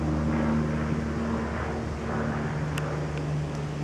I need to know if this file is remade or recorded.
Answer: recorded